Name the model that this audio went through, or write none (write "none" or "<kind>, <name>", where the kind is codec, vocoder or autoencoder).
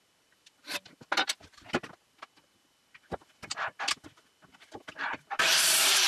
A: none